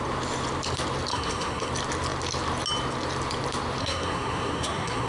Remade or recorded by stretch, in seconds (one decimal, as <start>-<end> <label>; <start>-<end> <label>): 0.0-1.1 recorded; 1.1-1.7 remade; 1.7-3.8 recorded; 3.8-5.1 remade